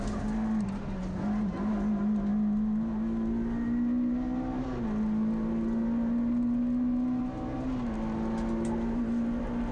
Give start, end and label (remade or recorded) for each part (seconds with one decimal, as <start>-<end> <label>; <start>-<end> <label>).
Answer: 0.0-9.7 recorded